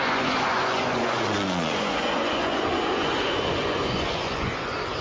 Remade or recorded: remade